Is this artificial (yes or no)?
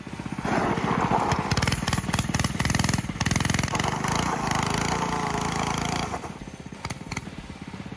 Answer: no